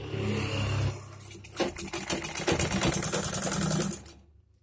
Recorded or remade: recorded